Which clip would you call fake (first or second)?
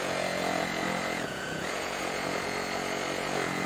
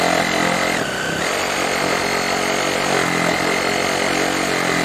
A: first